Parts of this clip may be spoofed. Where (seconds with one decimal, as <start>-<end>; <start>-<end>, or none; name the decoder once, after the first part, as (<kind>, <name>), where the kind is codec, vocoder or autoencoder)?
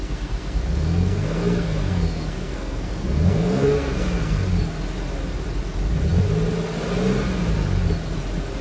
0.0-4.5 (codec, SNAC)